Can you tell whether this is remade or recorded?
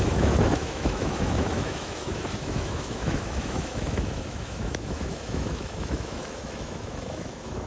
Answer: remade